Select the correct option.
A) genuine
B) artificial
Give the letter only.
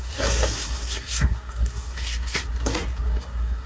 B